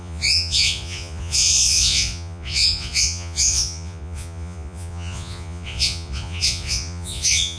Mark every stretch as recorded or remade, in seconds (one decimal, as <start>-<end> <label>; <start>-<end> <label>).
0.0-7.6 remade